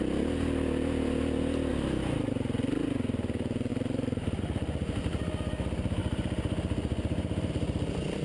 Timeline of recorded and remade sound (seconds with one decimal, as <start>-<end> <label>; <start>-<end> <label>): 0.0-1.7 recorded; 1.7-2.3 remade; 2.3-3.7 recorded; 3.7-4.4 remade; 4.4-6.0 recorded; 6.0-7.5 remade; 7.5-8.2 recorded